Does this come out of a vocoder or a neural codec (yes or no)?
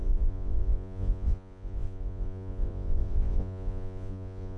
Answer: yes